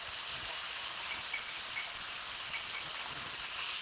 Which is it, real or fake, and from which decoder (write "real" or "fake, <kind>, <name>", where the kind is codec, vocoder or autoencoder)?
real